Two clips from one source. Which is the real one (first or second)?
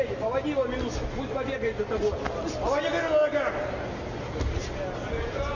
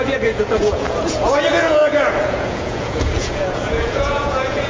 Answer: first